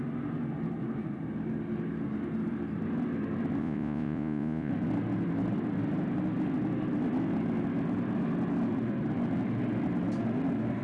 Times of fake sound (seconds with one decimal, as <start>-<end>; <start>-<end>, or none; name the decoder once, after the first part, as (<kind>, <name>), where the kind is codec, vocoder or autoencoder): 3.6-4.7 (vocoder, Vocos)